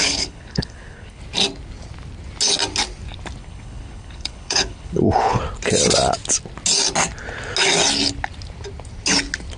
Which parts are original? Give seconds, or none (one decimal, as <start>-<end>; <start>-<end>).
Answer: 1.2-3.4; 5.4-9.6